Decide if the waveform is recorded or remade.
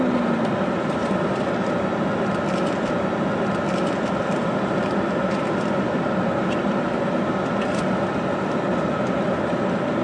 recorded